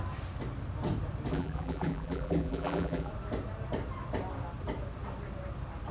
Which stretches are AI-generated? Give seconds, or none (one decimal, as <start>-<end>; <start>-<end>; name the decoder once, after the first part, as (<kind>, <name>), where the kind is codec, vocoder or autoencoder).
1.3-3.1 (vocoder, BigVGAN v2)